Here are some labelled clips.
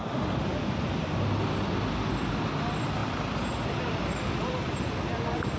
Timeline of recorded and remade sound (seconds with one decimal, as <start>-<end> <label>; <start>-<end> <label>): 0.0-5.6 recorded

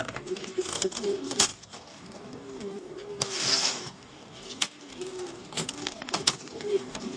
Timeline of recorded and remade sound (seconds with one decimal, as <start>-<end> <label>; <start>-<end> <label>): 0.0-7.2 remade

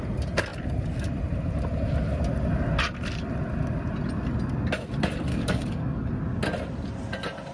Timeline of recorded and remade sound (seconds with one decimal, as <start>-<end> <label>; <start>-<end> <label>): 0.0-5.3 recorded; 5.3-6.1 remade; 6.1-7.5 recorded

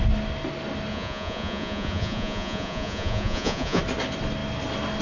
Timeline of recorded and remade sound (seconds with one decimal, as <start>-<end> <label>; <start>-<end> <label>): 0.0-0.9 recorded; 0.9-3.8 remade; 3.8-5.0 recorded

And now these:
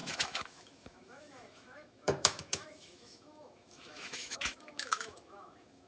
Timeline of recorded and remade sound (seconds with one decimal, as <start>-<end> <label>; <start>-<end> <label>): 0.0-5.9 remade

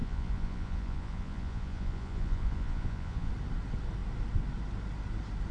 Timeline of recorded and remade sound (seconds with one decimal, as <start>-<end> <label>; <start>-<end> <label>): 0.0-3.3 remade; 3.3-5.5 recorded

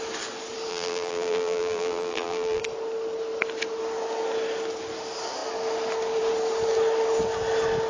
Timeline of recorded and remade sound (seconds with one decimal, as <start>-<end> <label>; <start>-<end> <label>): 0.0-0.7 recorded; 0.7-2.6 remade; 2.6-7.9 recorded